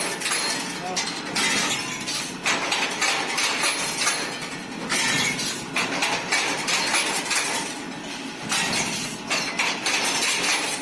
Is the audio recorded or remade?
recorded